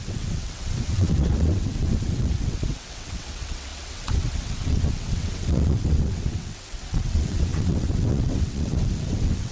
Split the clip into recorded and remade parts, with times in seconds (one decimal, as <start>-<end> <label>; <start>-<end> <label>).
0.0-9.5 remade